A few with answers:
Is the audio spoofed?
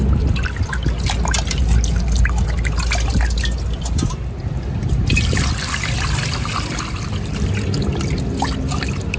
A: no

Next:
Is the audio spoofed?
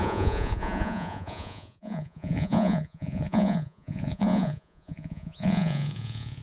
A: yes